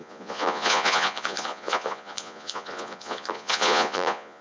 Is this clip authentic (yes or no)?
no